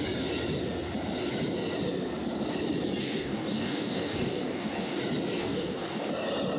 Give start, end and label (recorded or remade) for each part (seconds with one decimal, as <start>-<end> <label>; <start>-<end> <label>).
0.0-3.0 recorded; 3.0-5.0 remade; 5.0-5.4 recorded; 5.4-6.1 remade; 6.1-6.6 recorded